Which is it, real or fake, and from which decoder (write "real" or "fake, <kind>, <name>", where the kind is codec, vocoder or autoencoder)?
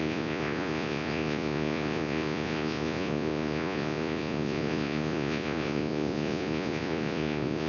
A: fake, vocoder, Vocos